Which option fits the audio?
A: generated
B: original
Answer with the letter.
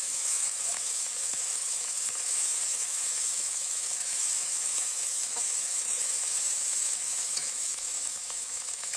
A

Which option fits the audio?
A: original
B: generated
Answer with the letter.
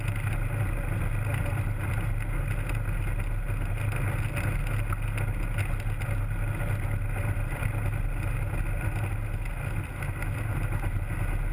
A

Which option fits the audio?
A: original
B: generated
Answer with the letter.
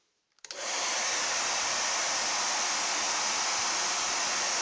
A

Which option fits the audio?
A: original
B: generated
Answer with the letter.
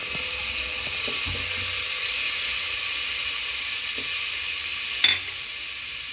A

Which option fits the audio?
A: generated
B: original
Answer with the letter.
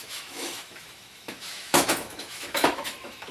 A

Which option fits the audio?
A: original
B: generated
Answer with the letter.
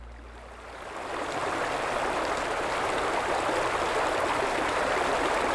A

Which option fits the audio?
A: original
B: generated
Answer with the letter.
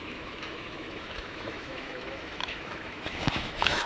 B